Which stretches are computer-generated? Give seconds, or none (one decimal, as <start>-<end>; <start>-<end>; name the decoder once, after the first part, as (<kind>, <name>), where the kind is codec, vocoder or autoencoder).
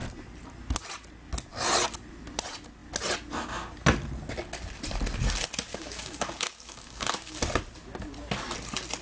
5.7-7.4 (codec, DAC)